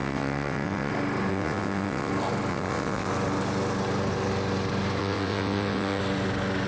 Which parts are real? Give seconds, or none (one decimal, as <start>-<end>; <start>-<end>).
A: 0.9-1.3; 2.1-2.5; 3.1-5.0; 6.0-6.7